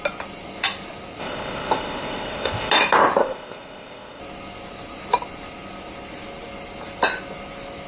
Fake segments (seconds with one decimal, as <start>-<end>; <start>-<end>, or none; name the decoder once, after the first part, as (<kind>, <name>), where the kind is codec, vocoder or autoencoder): 1.2-2.7 (codec, ZipCodec); 3.2-4.2